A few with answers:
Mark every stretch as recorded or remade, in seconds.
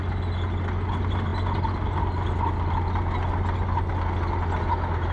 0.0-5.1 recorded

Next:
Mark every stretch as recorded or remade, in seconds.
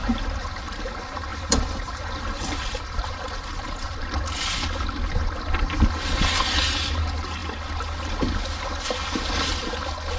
0.0-1.3 recorded; 1.3-4.4 remade; 4.4-10.2 recorded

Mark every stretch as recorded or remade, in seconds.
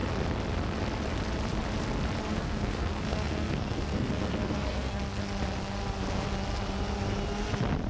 0.0-2.2 recorded; 2.2-5.0 remade; 5.0-7.9 recorded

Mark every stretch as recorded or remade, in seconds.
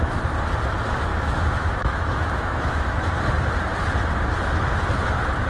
0.0-1.1 recorded; 1.1-3.1 remade; 3.1-5.5 recorded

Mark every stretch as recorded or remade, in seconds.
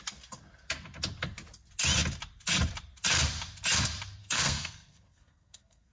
0.0-4.2 recorded; 4.2-5.9 remade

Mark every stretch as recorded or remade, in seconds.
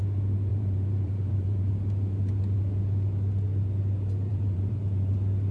0.0-0.5 recorded; 0.5-1.7 remade; 1.7-4.3 recorded; 4.3-5.1 remade; 5.1-5.5 recorded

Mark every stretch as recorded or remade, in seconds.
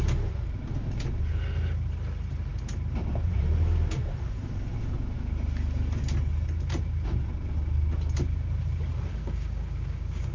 0.0-9.1 recorded; 9.1-10.3 remade